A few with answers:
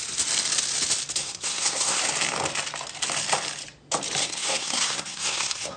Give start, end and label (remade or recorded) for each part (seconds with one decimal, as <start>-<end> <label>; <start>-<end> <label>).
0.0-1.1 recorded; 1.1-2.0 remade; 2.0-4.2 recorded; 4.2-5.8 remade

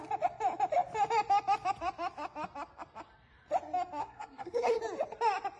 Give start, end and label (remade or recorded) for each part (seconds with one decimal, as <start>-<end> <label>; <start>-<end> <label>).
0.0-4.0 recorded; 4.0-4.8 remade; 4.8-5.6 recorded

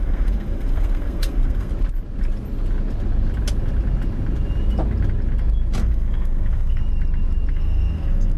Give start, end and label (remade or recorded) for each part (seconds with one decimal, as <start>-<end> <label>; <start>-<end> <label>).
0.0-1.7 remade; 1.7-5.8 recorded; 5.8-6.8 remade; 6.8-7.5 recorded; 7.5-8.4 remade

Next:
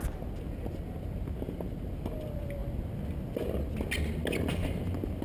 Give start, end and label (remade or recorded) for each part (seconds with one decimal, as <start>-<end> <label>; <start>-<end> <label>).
0.0-5.2 recorded

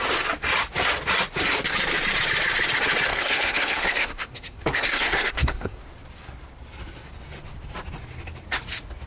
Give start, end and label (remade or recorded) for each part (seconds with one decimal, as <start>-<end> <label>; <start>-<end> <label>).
0.0-3.1 recorded; 3.1-5.8 remade; 5.8-9.1 recorded